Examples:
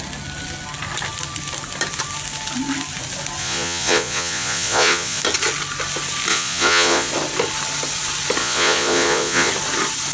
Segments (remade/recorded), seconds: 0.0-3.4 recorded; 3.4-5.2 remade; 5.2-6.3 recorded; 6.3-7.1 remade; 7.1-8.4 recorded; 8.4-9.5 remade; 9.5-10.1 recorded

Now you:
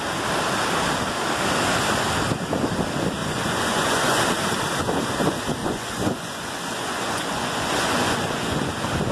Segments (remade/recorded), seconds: 0.0-3.2 recorded; 3.2-4.2 remade; 4.2-5.6 recorded; 5.6-8.7 remade; 8.7-9.1 recorded